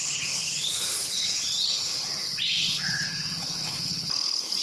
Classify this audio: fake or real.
fake